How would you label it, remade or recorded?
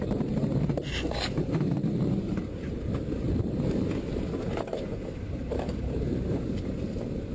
remade